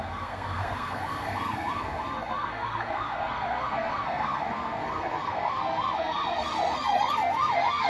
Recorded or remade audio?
remade